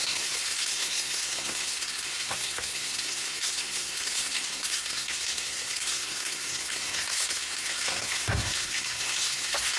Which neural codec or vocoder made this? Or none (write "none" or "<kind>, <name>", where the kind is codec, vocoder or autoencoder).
codec, SNAC